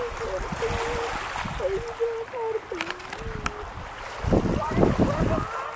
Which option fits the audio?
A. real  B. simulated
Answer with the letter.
A